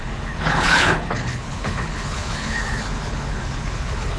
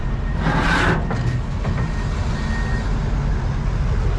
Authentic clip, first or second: second